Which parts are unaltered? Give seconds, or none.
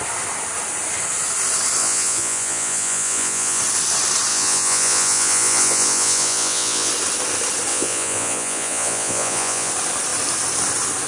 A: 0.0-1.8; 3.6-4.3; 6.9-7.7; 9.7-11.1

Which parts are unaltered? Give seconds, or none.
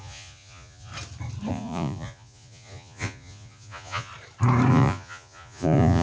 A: 0.9-1.5; 4.1-4.7